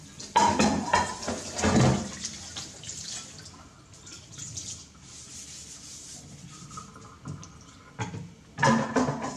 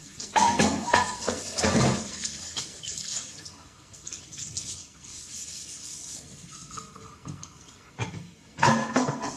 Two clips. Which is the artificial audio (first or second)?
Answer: second